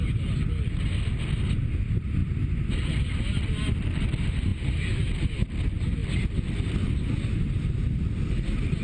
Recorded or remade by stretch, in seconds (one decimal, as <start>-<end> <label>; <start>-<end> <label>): 0.0-8.8 recorded